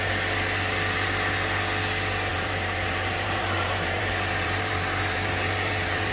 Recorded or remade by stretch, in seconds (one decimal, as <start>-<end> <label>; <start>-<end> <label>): 0.0-2.3 recorded; 2.3-6.1 remade